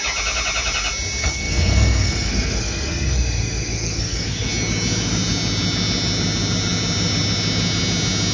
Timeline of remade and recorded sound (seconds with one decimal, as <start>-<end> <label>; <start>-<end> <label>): 0.0-1.2 recorded; 1.2-4.5 remade; 4.5-8.3 recorded